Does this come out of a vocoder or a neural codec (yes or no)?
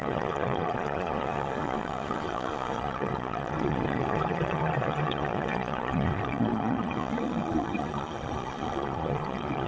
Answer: yes